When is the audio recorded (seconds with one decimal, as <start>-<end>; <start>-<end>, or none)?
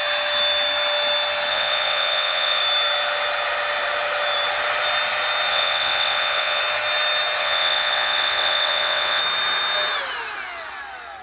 0.0-1.5; 2.6-5.5; 6.6-7.4; 9.2-11.2